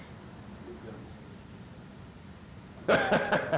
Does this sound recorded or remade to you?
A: recorded